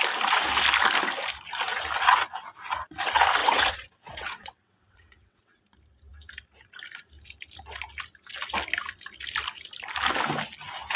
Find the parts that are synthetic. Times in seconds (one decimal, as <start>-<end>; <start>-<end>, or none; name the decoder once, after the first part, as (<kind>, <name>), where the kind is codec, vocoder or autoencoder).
3.4-5.6 (vocoder, WaveNeXt)